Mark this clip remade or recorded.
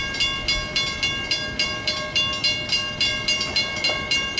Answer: recorded